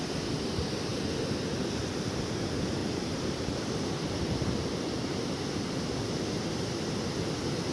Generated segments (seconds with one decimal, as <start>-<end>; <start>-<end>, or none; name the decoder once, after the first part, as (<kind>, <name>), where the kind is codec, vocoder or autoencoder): 2.8-5.4 (vocoder, BigVGAN v2)